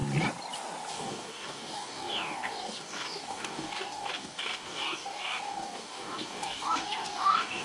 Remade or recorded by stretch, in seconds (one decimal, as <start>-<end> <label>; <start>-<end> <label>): 0.0-0.9 recorded; 0.9-7.6 remade